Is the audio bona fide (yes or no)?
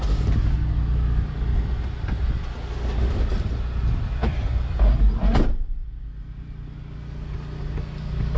yes